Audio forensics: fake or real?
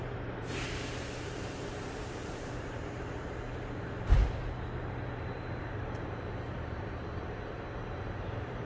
fake